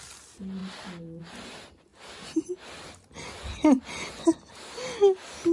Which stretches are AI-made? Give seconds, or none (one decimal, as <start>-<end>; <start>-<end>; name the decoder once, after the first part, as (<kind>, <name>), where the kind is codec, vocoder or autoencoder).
none